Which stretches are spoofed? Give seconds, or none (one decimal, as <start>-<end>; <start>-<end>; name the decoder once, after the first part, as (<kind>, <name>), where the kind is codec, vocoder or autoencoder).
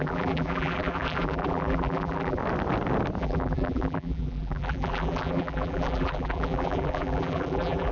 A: 0.0-2.4 (vocoder, BigVGAN v2); 3.2-7.9